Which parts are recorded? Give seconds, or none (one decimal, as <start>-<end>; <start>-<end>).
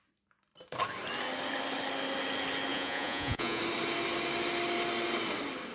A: 0.0-2.7; 3.6-5.7